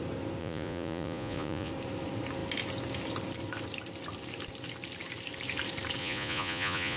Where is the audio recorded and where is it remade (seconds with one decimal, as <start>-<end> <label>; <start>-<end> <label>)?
0.0-0.4 recorded; 0.4-1.7 remade; 1.7-6.0 recorded; 6.0-7.0 remade